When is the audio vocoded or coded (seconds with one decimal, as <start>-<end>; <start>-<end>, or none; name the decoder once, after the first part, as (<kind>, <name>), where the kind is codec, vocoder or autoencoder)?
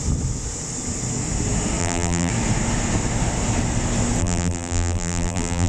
1.8-2.3 (vocoder, BigVGAN v2); 4.2-5.7